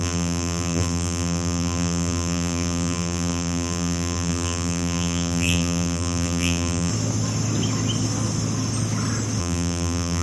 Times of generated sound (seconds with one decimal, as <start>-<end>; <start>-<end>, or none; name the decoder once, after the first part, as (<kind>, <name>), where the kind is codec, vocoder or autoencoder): 0.0-6.9 (vocoder, BigVGAN v2); 9.4-10.2